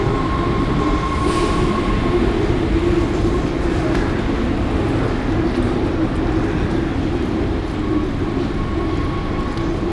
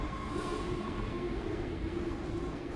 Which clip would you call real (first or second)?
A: first